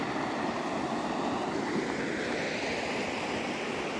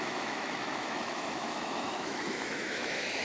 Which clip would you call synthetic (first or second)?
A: second